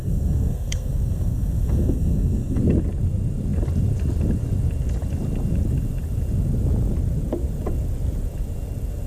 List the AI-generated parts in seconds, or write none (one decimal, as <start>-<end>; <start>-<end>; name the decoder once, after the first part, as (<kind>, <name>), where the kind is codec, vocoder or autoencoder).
0.0-2.6 (codec, SNAC)